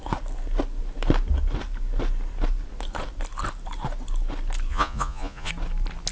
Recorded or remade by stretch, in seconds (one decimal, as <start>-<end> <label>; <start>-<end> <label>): 0.0-4.7 recorded; 4.7-5.5 remade; 5.5-6.1 recorded